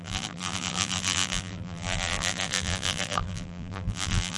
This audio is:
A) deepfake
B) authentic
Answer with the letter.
A